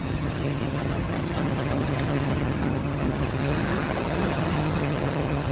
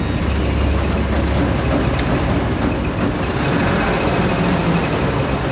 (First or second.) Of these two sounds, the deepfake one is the first